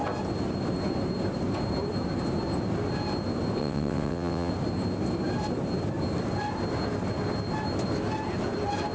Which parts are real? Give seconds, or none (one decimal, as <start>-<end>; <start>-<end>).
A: 0.0-3.6; 4.5-8.9